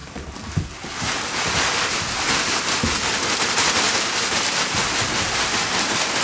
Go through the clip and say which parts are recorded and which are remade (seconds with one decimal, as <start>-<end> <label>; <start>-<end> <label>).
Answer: 0.0-6.2 recorded